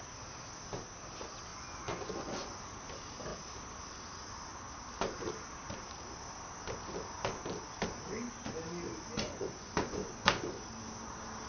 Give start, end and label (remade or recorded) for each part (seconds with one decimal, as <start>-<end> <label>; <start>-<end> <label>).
0.0-1.5 recorded; 1.5-2.6 remade; 2.6-9.1 recorded; 9.1-10.6 remade; 10.6-11.5 recorded